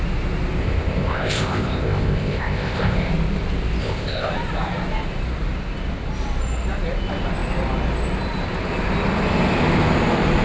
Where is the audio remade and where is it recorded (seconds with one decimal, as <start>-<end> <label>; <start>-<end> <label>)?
0.0-0.6 recorded; 0.6-3.1 remade; 3.1-3.8 recorded; 3.8-4.3 remade; 4.3-10.4 recorded